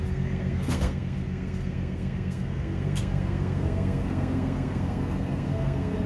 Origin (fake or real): fake